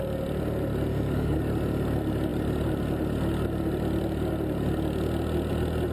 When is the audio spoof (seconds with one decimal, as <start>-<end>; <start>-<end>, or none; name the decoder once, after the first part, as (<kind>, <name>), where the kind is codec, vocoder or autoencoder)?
0.9-1.4 (codec, DAC)